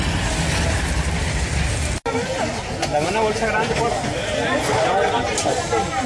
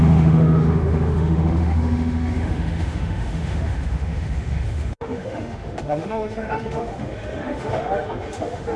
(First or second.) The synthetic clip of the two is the second